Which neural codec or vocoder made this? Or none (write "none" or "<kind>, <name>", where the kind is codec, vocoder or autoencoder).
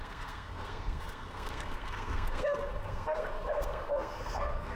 codec, SNAC